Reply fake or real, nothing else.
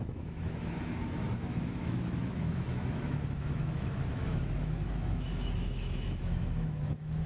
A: fake